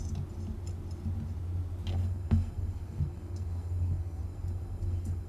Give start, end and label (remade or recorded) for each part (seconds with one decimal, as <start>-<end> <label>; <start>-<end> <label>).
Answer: 0.0-1.9 recorded; 1.9-5.3 remade